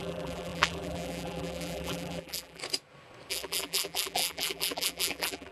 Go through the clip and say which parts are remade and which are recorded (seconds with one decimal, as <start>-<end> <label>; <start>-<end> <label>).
0.0-2.6 remade; 2.6-3.3 recorded; 3.3-5.5 remade